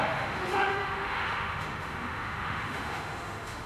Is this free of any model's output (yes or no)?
no